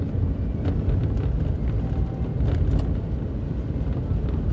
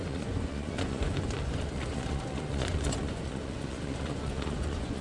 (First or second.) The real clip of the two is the first